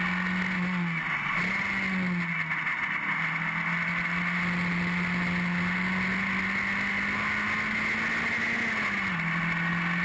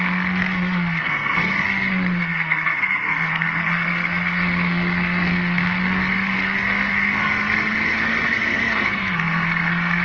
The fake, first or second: second